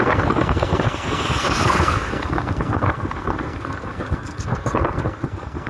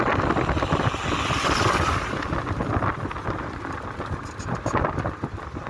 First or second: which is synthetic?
first